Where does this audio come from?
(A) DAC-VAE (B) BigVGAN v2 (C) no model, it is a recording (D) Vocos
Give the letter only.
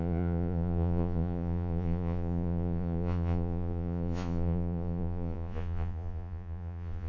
D